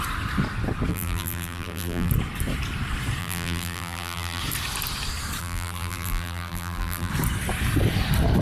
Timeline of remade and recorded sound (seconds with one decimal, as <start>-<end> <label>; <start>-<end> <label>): 0.0-0.9 recorded; 0.9-2.1 remade; 2.1-3.2 recorded; 3.2-4.4 remade; 4.4-5.4 recorded; 5.4-7.1 remade; 7.1-8.4 recorded